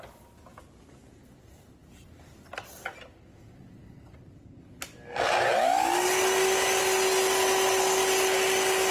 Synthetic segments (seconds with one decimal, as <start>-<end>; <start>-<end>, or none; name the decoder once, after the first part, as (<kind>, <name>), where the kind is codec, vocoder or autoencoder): none